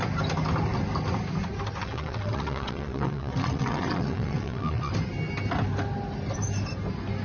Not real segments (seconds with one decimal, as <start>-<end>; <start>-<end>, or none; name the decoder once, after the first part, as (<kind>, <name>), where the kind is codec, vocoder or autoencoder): 1.8-4.9 (vocoder, WaveNeXt)